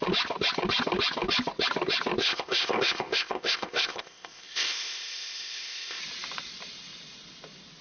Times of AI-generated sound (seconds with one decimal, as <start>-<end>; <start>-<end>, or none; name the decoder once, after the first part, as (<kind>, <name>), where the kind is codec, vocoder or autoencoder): 2.2-6.0 (codec, ZipCodec)